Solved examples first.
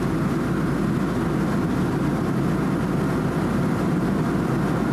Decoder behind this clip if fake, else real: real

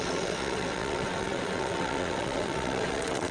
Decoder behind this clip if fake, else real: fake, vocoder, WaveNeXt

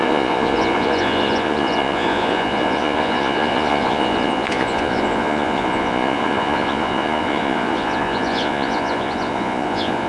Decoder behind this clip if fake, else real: fake, vocoder, Vocos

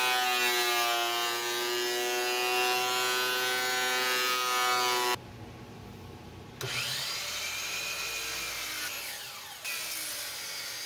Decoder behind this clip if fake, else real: real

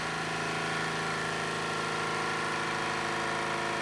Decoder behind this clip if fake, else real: real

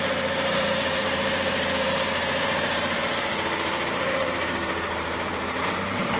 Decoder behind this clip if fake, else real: fake, vocoder, BigVGAN v2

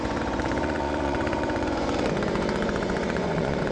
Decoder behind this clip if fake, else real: fake, vocoder, Vocos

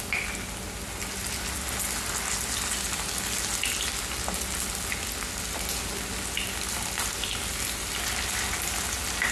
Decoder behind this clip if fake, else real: real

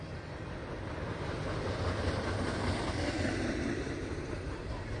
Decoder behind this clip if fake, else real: real